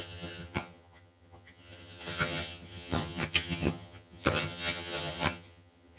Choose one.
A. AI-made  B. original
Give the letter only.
A